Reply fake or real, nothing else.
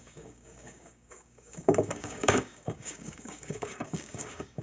fake